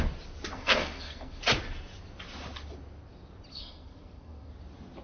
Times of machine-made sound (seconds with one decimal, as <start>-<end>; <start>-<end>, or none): 0.5-1.4; 3.5-4.5